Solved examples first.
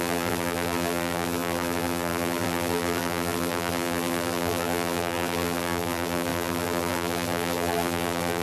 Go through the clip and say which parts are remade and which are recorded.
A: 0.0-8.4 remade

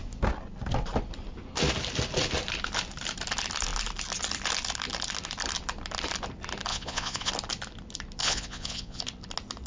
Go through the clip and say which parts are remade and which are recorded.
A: 0.0-6.7 recorded; 6.7-7.3 remade; 7.3-8.2 recorded; 8.2-9.0 remade; 9.0-9.7 recorded

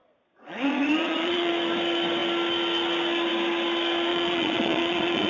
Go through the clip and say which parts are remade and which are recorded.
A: 0.0-1.5 remade; 1.5-4.1 recorded; 4.1-5.3 remade

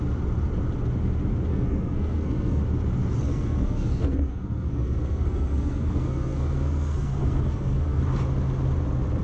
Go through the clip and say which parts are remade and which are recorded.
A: 0.0-1.5 recorded; 1.5-2.6 remade; 2.6-3.3 recorded; 3.3-8.0 remade; 8.0-9.2 recorded

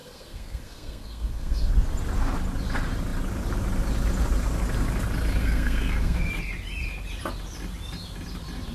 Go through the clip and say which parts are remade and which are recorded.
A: 0.0-1.7 remade; 1.7-5.4 recorded; 5.4-6.3 remade; 6.3-8.7 recorded

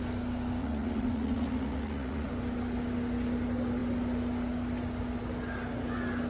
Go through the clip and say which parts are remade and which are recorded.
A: 0.0-0.6 recorded; 0.6-2.3 remade; 2.3-6.3 recorded